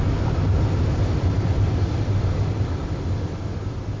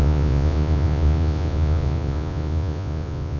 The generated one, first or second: second